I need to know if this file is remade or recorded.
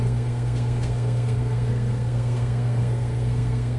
remade